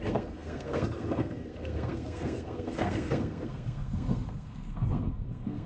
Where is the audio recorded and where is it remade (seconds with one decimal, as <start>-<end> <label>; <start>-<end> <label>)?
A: 0.0-5.7 remade